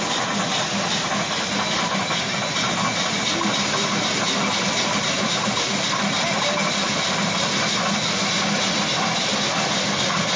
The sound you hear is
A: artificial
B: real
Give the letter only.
B